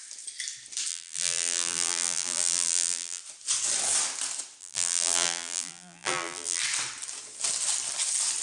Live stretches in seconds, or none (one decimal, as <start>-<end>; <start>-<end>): 0.0-0.9; 3.2-4.6; 6.6-8.4